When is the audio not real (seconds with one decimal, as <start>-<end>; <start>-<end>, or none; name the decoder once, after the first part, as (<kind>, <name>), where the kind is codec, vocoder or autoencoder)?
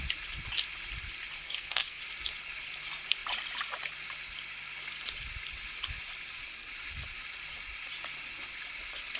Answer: 1.4-2.0 (codec, SNAC)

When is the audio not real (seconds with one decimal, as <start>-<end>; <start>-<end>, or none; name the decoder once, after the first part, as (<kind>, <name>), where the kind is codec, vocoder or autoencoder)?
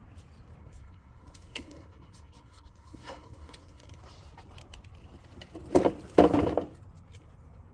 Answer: 0.6-4.0 (codec, SNAC)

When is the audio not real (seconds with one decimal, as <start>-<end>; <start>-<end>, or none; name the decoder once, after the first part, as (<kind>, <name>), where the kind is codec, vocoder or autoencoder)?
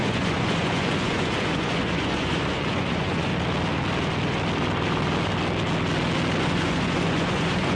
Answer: 0.0-3.3 (vocoder, Vocos); 6.4-7.8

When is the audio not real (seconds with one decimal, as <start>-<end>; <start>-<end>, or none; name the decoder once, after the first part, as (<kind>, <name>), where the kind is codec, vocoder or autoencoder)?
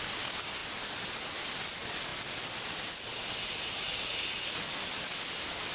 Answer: none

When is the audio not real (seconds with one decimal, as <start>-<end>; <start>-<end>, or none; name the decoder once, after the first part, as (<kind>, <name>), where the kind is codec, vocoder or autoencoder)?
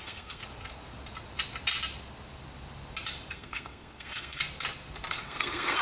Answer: 0.0-0.4 (codec, SNAC); 3.3-4.4; 5.1-5.8